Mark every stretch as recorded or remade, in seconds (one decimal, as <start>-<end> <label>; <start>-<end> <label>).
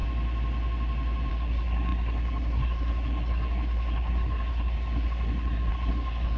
0.0-1.3 recorded; 1.3-6.4 remade